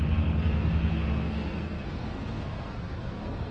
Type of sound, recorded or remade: remade